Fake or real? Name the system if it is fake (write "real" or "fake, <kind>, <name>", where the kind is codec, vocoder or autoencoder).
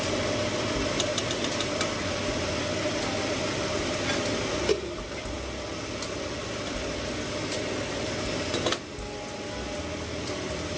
real